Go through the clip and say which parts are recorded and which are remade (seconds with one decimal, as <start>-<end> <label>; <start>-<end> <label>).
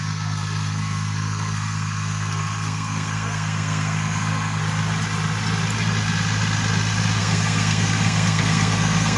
0.0-4.6 remade; 4.6-7.2 recorded; 7.2-9.2 remade